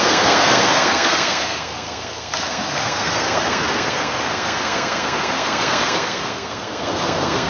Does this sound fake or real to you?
fake